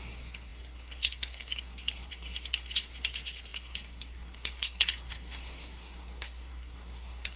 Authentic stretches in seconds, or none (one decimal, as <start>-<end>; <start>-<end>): none